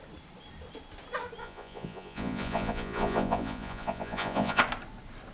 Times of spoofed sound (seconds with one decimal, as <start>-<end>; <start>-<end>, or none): 1.4-4.6